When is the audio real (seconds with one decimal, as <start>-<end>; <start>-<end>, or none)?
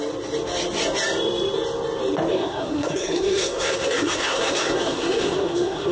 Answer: 0.0-2.3